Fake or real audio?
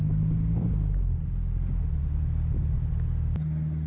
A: real